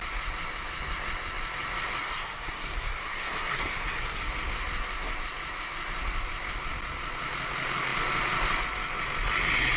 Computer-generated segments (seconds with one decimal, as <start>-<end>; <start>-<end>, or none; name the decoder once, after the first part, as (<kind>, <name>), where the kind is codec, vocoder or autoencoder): 2.0-4.2 (codec, SNAC)